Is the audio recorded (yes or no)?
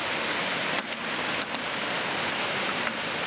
yes